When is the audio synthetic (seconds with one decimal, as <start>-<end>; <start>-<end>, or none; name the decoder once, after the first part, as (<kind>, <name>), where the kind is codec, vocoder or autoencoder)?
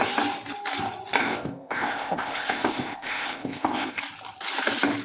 1.2-4.0 (codec, ZipCodec)